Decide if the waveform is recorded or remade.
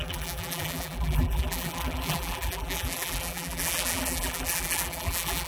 remade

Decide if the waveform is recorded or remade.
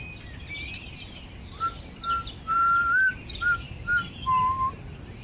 recorded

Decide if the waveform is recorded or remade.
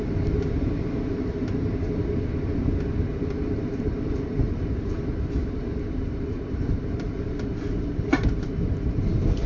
remade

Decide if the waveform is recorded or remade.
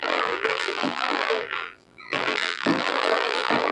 remade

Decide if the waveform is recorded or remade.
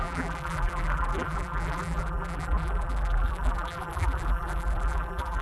remade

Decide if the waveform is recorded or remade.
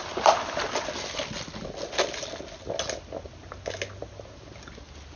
recorded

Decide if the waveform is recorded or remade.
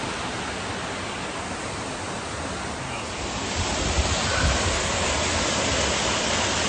recorded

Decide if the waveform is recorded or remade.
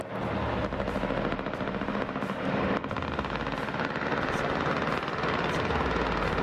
recorded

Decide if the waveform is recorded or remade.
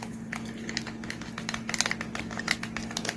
recorded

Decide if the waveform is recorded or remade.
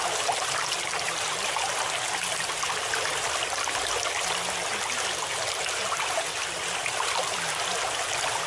recorded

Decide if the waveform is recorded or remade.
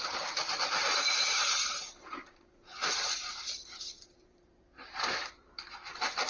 remade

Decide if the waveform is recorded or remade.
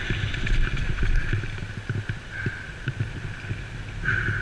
recorded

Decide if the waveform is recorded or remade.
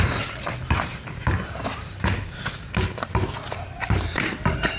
remade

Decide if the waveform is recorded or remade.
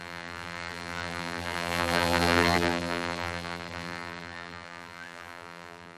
remade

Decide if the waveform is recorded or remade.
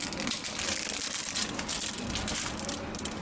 recorded